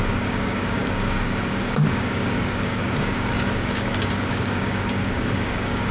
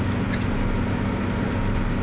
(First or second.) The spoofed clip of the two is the first